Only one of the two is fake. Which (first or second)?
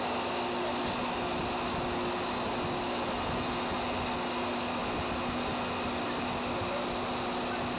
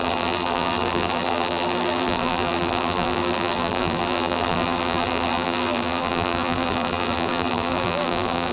second